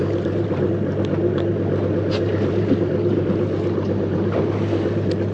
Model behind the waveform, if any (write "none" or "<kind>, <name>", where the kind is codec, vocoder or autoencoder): none